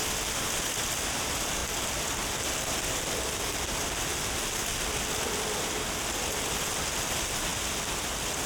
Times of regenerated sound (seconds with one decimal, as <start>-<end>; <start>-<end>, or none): none